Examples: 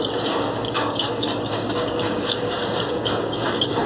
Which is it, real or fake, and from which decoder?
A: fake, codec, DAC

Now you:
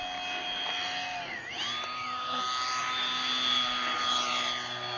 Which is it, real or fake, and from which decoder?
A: real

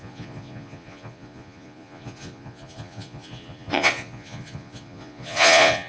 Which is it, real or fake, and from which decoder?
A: fake, vocoder, Vocos